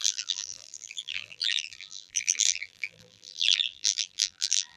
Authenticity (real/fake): fake